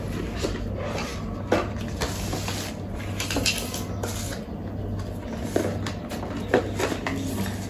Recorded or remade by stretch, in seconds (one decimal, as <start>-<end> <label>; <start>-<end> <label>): 0.0-7.7 recorded